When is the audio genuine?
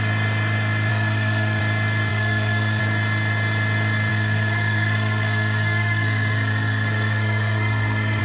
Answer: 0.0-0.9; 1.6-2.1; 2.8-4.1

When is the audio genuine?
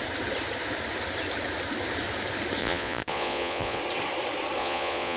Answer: 0.0-2.6; 3.8-4.6